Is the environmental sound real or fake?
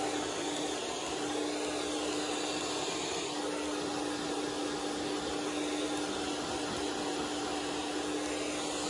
real